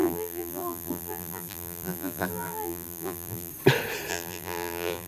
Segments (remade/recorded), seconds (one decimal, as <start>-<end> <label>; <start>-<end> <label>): 0.0-3.5 remade; 3.5-4.1 recorded; 4.1-5.1 remade